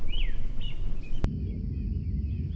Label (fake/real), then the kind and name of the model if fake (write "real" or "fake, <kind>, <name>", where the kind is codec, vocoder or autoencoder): real